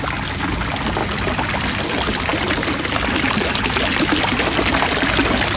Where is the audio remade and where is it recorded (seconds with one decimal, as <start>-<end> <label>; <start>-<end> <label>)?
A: 0.0-5.6 recorded